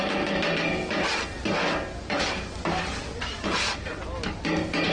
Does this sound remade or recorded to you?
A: recorded